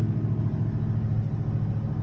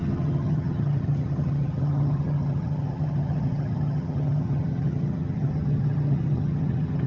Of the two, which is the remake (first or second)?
second